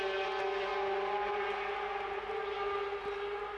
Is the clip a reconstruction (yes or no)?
no